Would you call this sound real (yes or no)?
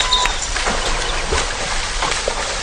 yes